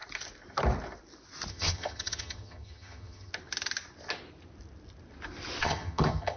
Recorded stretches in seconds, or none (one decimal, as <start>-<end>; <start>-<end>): 0.0-1.5; 3.3-5.6